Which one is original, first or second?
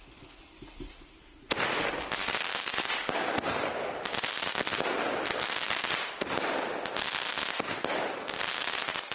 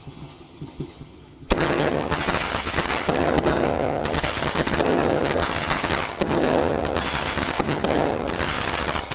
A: first